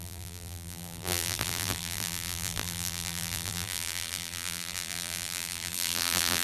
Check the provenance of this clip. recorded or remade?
remade